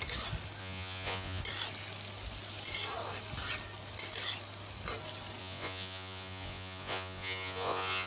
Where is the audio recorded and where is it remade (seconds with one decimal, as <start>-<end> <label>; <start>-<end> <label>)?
0.0-0.6 recorded; 0.6-1.4 remade; 1.4-5.4 recorded; 5.4-8.1 remade